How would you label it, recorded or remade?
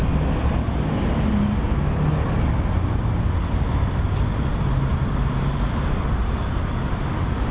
recorded